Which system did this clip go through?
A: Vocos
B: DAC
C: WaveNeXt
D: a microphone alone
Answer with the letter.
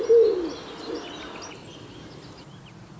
D